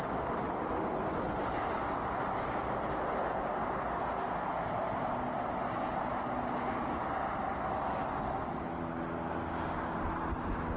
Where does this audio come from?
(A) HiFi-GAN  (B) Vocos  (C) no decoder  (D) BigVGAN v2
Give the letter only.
C